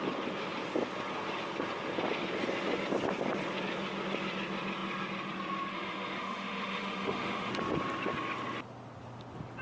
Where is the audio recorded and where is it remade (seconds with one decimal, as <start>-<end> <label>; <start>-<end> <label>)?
0.0-5.7 recorded; 5.7-7.5 remade; 7.5-9.6 recorded